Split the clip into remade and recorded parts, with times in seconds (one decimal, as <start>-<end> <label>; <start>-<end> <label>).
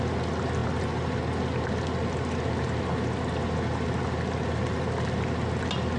0.0-6.0 recorded